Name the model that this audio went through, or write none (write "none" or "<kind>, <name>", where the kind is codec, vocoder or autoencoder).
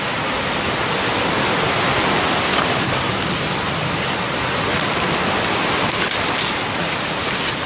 none